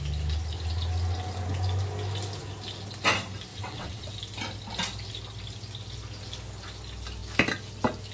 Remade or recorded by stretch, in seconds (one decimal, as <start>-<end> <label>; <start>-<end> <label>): 0.0-3.5 recorded; 3.5-4.1 remade; 4.1-8.1 recorded